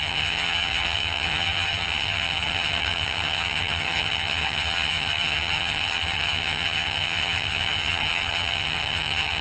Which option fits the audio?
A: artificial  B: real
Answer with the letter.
A